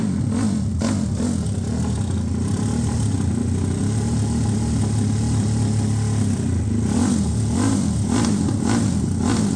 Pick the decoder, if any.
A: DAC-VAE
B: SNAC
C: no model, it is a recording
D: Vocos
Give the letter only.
C